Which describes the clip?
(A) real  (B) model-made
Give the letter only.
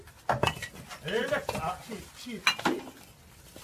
A